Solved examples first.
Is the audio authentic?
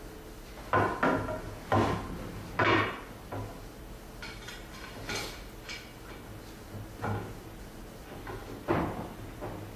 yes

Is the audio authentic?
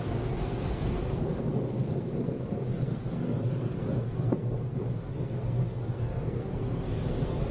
no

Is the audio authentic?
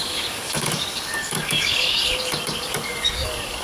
no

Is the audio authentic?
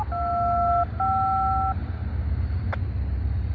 yes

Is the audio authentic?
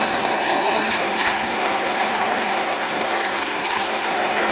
no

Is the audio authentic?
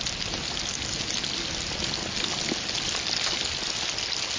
yes